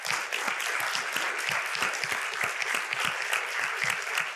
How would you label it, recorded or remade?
recorded